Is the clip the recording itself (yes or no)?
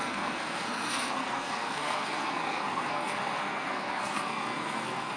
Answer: no